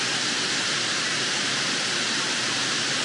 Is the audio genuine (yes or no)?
yes